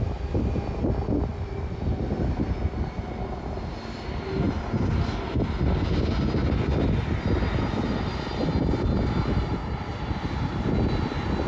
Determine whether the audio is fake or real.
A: real